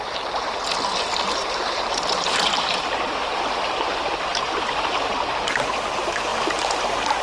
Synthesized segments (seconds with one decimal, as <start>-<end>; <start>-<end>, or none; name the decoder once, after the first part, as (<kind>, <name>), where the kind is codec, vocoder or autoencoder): 1.4-3.2 (vocoder, BigVGAN v2); 4.3-4.9